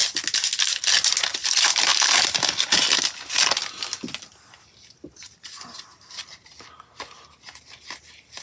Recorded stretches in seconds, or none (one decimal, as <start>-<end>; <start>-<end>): 0.0-8.4